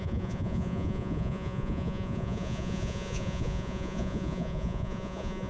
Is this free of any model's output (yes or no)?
no